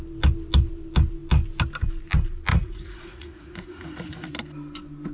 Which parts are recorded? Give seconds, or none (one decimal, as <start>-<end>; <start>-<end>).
0.0-2.5; 4.3-5.1